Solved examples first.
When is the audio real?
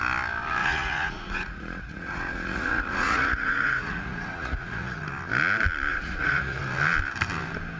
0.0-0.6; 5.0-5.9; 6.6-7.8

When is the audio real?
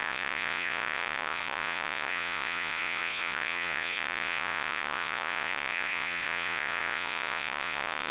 none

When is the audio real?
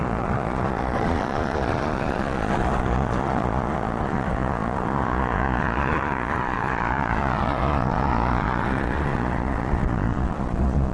none